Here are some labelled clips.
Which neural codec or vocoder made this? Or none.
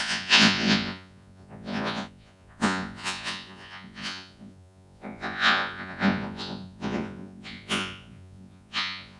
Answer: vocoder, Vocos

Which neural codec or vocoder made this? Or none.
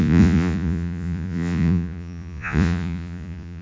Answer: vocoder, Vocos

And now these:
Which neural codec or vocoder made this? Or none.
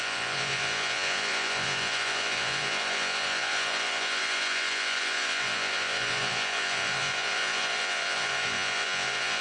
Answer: vocoder, Vocos